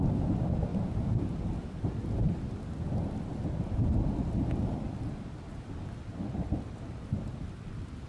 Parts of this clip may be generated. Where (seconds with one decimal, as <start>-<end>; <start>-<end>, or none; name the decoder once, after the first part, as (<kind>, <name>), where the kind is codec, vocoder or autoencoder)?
0.0-0.7 (vocoder, BigVGAN v2); 1.5-4.2; 7.2-8.1